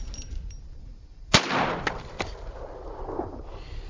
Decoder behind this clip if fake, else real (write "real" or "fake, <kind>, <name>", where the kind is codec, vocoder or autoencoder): real